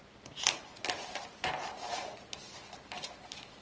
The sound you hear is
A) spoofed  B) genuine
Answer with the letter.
B